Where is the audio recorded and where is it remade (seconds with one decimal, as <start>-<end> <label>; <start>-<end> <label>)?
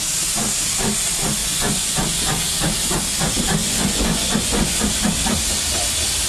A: 0.0-1.4 recorded; 1.4-2.2 remade; 2.2-3.6 recorded; 3.6-4.8 remade; 4.8-6.3 recorded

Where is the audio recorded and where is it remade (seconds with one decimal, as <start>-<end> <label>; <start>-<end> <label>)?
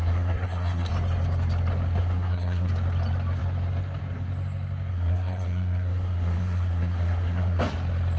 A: 0.0-0.9 remade; 0.9-2.0 recorded; 2.0-2.7 remade; 2.7-4.9 recorded; 4.9-7.6 remade; 7.6-8.2 recorded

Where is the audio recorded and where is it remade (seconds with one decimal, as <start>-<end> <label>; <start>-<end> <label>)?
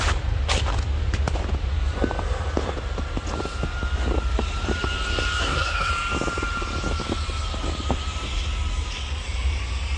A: 0.0-5.4 recorded; 5.4-5.9 remade; 5.9-10.0 recorded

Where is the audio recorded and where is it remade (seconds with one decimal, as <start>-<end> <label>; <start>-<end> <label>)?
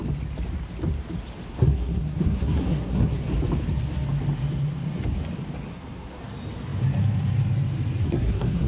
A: 0.0-1.5 recorded; 1.5-3.2 remade; 3.2-5.7 recorded; 5.7-6.2 remade; 6.2-8.0 recorded; 8.0-8.7 remade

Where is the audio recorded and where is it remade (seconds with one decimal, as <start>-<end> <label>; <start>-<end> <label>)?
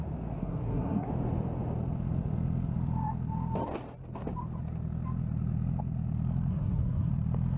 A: 0.0-0.4 recorded; 0.4-1.1 remade; 1.1-6.5 recorded; 6.5-7.1 remade; 7.1-7.6 recorded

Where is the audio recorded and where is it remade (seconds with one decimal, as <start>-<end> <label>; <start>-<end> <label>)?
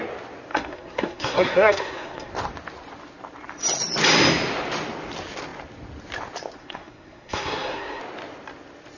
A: 0.0-0.5 recorded; 0.5-2.3 remade; 2.3-6.6 recorded; 6.6-8.0 remade; 8.0-9.0 recorded